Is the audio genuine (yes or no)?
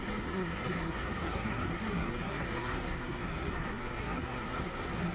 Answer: no